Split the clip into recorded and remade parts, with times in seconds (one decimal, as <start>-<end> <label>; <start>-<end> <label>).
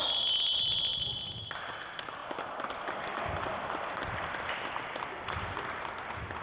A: 0.0-6.4 recorded